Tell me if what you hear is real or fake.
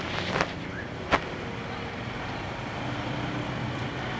real